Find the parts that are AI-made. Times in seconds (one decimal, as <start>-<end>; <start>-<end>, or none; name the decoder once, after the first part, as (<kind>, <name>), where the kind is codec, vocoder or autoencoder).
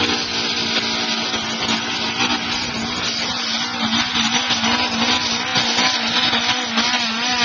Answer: none